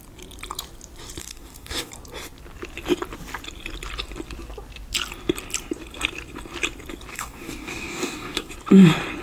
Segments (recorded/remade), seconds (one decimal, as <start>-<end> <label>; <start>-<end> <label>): 0.0-1.2 recorded; 1.2-1.9 remade; 1.9-7.1 recorded; 7.1-8.5 remade; 8.5-9.2 recorded